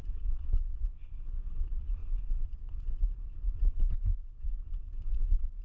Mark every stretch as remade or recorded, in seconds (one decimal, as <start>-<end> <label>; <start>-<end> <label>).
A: 0.0-5.6 remade